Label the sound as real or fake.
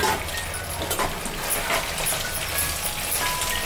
real